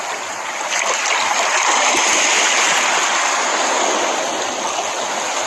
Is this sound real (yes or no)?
yes